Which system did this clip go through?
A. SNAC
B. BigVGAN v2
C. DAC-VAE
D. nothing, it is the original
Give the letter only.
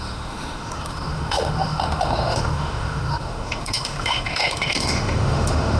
C